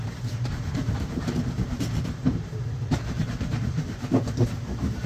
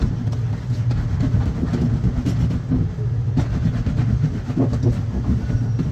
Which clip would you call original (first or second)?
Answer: second